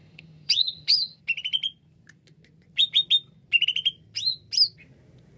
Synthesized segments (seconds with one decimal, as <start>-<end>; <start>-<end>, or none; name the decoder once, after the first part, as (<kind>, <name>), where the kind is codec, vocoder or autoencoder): 0.0-1.2 (vocoder, HiFi-GAN)